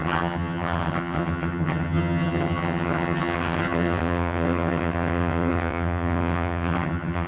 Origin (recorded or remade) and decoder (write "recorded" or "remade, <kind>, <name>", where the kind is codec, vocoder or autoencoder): remade, vocoder, HiFi-GAN